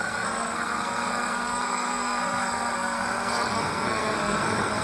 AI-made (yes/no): yes